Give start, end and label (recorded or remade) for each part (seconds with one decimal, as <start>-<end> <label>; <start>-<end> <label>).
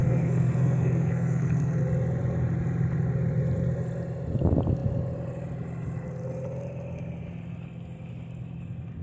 0.0-1.8 remade; 1.8-9.0 recorded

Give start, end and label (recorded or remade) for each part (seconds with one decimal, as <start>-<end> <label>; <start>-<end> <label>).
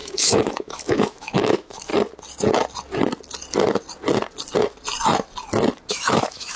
0.0-1.9 remade; 1.9-5.9 recorded; 5.9-6.6 remade